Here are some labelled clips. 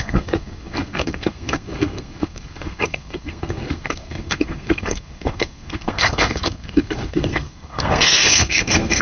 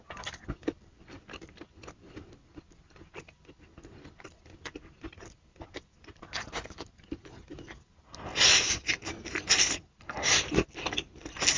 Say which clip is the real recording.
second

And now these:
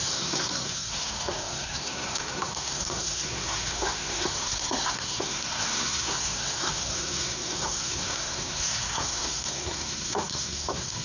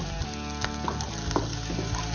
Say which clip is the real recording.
second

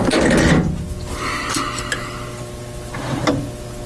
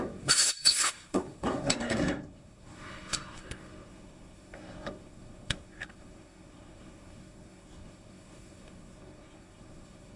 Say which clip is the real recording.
first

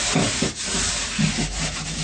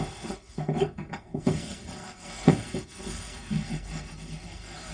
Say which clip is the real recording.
first